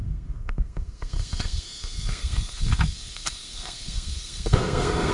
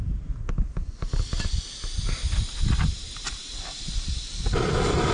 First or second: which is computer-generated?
first